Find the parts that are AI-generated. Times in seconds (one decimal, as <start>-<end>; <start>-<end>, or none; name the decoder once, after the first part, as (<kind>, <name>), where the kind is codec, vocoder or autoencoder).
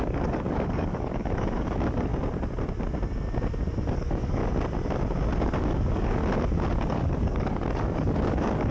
0.0-2.1 (codec, DAC); 3.9-4.4; 5.4-6.2; 6.7-8.7